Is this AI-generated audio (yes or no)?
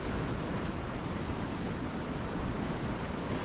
no